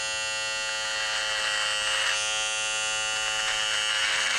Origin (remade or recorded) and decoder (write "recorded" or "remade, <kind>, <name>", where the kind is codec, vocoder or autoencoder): recorded